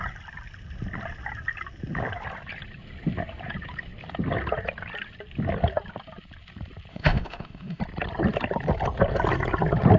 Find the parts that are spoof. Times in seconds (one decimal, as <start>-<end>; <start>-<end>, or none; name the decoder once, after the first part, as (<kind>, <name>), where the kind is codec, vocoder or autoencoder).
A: 6.9-7.8 (autoencoder, DAC-VAE)